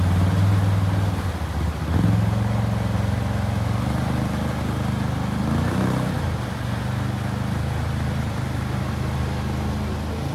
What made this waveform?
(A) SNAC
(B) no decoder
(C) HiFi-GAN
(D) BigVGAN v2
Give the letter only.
B